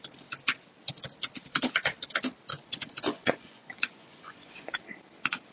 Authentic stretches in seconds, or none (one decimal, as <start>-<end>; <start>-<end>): 0.0-2.5; 4.7-5.5